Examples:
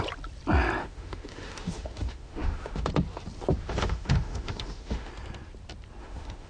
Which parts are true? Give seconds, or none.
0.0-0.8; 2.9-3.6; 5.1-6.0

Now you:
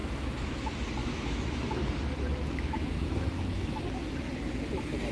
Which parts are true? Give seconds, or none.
0.6-1.0; 1.9-2.3; 3.8-5.1

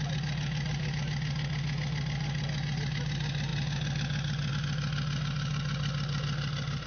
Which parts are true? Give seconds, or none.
0.0-6.9

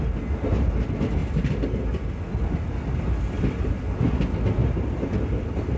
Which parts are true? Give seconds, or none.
0.0-5.8

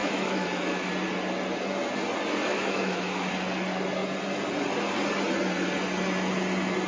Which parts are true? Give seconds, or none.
0.9-2.5; 3.3-6.9

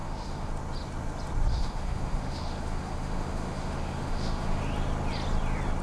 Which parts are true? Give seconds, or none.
0.5-1.5; 4.6-5.8

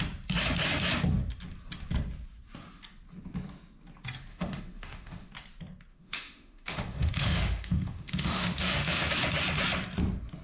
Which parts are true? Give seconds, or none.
0.0-4.3; 5.3-5.9; 9.1-10.4